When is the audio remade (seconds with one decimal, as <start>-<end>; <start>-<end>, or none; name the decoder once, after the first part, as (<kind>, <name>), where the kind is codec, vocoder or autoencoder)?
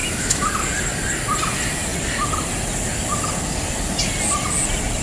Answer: 0.0-0.5 (autoencoder, DAC-VAE)